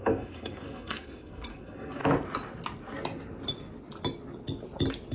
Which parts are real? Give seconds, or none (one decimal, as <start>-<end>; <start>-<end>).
2.0-5.1